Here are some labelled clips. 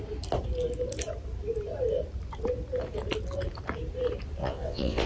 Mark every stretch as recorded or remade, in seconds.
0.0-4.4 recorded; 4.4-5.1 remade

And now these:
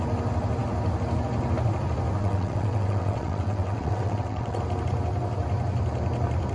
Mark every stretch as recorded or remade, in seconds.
0.0-2.2 recorded; 2.2-4.6 remade; 4.6-6.5 recorded

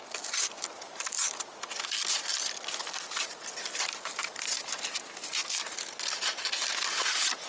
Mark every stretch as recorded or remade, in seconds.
0.0-7.5 recorded

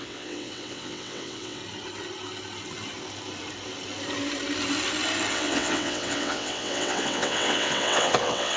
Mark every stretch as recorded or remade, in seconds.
0.0-1.6 remade; 1.6-5.3 recorded; 5.3-8.6 remade